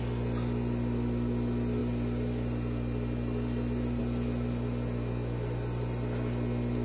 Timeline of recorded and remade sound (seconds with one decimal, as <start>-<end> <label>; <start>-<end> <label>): 0.0-6.8 recorded